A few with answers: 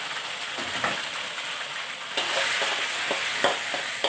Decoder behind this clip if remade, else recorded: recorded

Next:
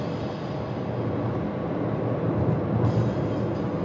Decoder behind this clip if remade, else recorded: recorded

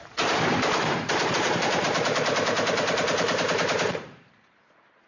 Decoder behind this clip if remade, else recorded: remade, vocoder, BigVGAN v2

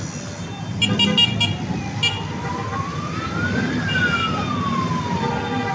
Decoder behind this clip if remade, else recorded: recorded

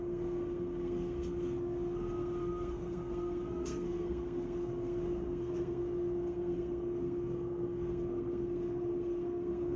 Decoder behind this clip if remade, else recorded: remade, codec, SNAC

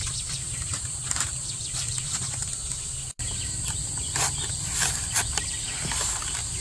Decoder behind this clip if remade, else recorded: recorded